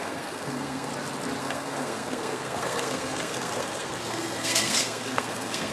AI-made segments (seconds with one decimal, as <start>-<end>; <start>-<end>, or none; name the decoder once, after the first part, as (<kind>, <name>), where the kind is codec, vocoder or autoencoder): 0.0-0.9 (codec, SNAC); 1.4-5.7